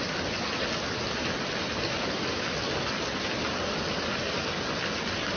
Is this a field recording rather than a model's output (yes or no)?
yes